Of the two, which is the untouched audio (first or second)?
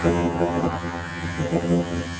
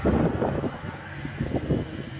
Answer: second